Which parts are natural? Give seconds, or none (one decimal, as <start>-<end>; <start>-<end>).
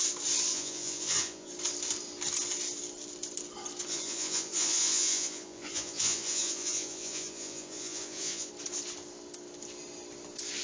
0.0-0.5; 1.5-3.9; 8.5-10.6